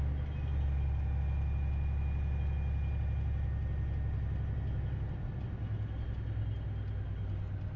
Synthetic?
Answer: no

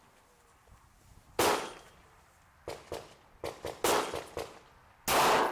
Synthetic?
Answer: no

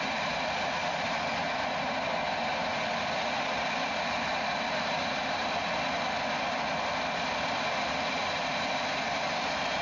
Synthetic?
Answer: no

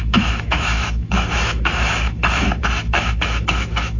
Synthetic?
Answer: yes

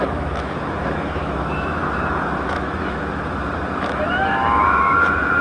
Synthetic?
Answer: yes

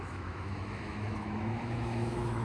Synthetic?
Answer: yes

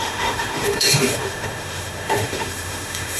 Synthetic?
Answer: yes